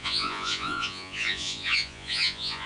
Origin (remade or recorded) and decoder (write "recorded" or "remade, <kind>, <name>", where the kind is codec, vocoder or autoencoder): remade, vocoder, Vocos